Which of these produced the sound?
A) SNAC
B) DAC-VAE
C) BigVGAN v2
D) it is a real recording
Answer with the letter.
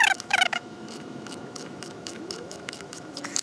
B